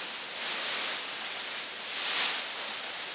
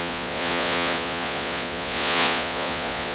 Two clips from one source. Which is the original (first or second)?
first